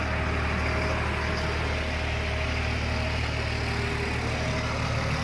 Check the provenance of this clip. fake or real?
real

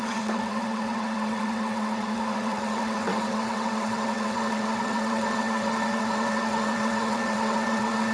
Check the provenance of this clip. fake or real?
fake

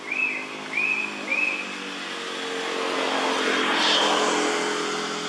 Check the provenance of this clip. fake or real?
real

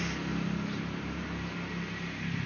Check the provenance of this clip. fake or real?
real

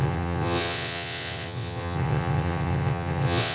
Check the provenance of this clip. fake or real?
fake